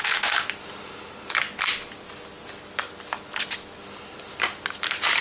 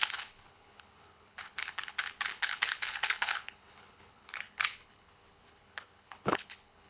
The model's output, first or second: second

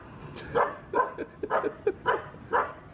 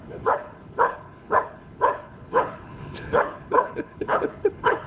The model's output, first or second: second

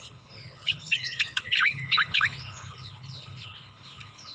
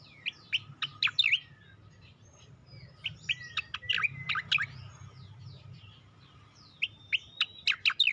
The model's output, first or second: first